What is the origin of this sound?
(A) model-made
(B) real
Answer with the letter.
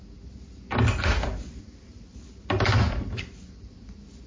B